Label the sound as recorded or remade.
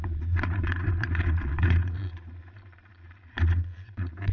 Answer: remade